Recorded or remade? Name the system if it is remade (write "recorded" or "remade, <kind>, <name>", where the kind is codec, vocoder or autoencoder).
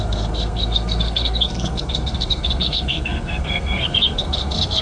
remade, codec, SNAC